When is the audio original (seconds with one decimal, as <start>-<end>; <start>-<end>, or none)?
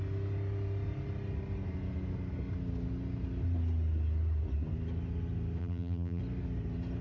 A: 0.0-5.6; 6.2-7.0